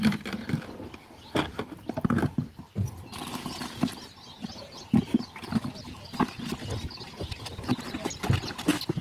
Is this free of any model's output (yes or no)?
yes